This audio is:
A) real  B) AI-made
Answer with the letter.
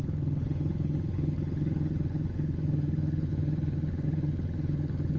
B